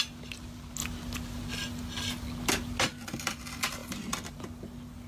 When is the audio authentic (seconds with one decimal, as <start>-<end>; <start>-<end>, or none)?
0.0-5.1